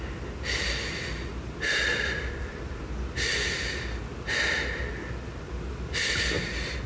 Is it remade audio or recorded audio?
recorded